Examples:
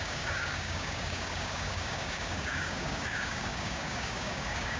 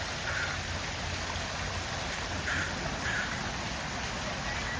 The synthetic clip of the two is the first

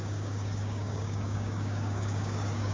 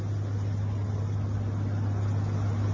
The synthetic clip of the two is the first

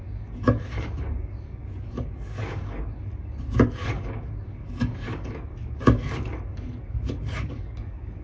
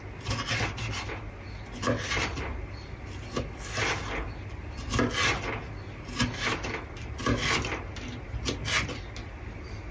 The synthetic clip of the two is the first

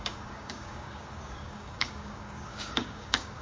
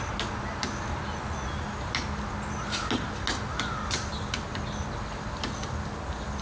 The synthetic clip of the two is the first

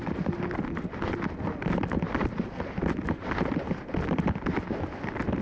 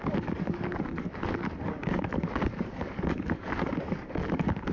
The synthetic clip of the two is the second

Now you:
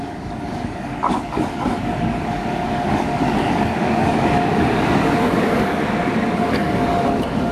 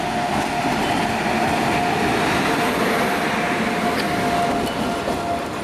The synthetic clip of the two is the first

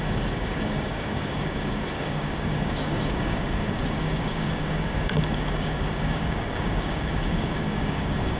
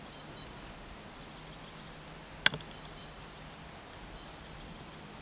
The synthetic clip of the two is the first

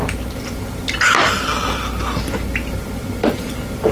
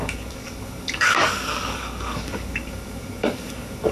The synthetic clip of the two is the second